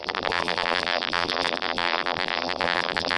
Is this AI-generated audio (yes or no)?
yes